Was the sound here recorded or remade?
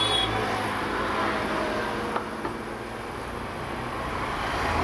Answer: recorded